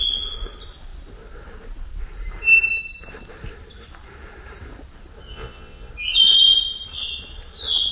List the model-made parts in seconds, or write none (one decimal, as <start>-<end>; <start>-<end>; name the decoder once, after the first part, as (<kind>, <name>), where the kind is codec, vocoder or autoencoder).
5.3-5.9 (vocoder, Vocos)